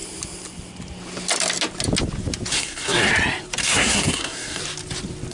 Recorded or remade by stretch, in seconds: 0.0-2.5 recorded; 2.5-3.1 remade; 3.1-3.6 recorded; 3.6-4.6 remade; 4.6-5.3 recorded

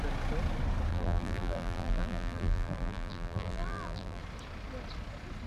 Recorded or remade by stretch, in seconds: 0.0-0.9 recorded; 0.9-4.2 remade; 4.2-5.5 recorded

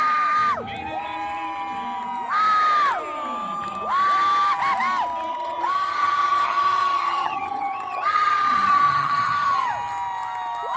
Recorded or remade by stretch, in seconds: 0.0-5.3 recorded; 5.3-9.7 remade; 9.7-10.8 recorded

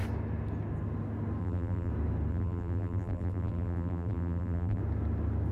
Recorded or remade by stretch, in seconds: 0.0-1.4 recorded; 1.4-1.9 remade; 1.9-2.3 recorded; 2.3-4.8 remade; 4.8-5.5 recorded

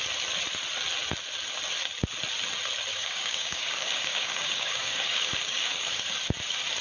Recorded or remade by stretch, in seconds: 0.0-2.9 recorded; 2.9-6.0 remade; 6.0-6.8 recorded

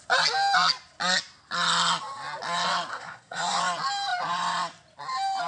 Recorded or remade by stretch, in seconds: 0.0-2.9 recorded; 2.9-3.6 remade; 3.6-5.5 recorded